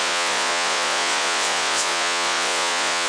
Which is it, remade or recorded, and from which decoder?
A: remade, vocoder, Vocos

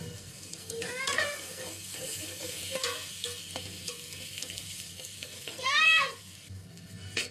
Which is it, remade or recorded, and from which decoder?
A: remade, codec, SNAC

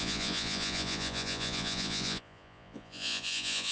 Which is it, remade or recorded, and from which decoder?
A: remade, vocoder, Vocos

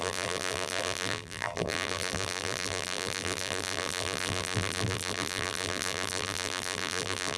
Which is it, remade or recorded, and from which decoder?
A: remade, vocoder, BigVGAN v2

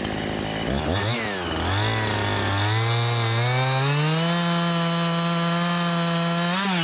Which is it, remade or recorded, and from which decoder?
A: recorded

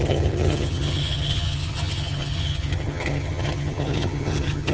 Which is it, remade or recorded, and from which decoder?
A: remade, vocoder, HiFi-GAN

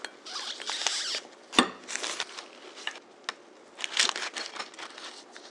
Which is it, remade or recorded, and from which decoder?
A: recorded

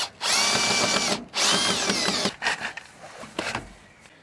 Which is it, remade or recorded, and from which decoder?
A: recorded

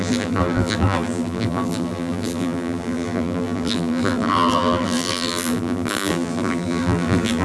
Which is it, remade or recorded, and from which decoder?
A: remade, vocoder, BigVGAN v2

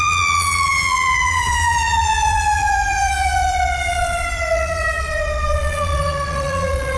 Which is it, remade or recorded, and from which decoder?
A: remade, vocoder, Vocos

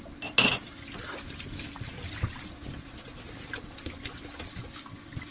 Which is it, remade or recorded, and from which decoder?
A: recorded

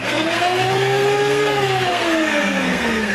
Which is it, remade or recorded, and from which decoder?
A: remade, codec, SNAC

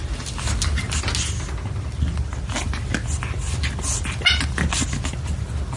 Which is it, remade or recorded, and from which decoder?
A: recorded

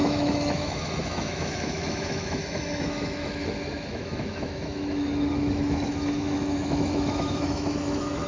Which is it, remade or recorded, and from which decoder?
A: remade, autoencoder, DAC-VAE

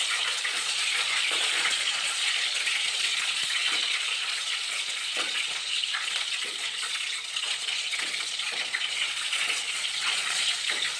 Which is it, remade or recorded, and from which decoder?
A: remade, vocoder, Vocos